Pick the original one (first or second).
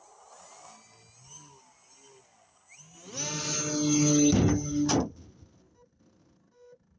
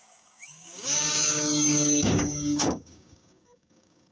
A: first